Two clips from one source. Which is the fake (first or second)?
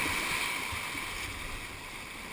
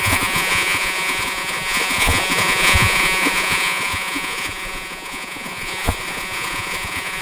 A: second